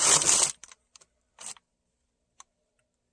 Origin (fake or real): fake